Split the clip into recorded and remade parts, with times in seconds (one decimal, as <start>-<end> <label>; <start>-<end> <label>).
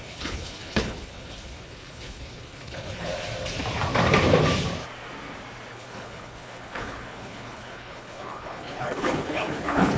0.0-3.1 remade; 3.1-5.7 recorded; 5.7-10.0 remade